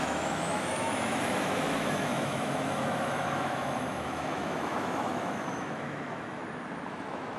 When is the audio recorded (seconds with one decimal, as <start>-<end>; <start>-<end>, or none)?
6.4-6.9